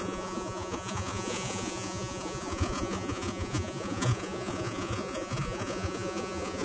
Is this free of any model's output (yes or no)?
no